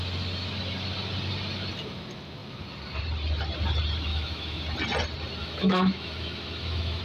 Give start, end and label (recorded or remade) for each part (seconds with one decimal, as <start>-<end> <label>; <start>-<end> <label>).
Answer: 0.0-4.1 recorded; 4.1-4.6 remade; 4.6-5.4 recorded; 5.4-7.0 remade